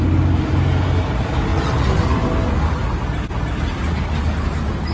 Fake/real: real